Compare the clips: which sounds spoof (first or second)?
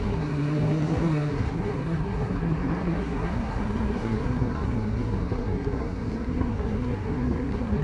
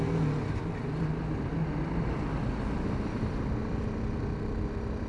first